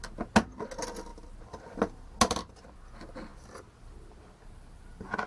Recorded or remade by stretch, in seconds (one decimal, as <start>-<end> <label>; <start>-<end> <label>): 0.0-5.3 recorded